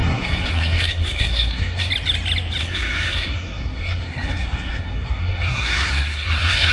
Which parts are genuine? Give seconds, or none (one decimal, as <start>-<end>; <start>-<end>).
1.9-2.6